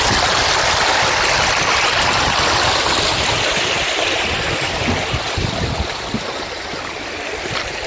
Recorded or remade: recorded